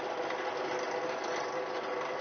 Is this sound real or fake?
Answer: real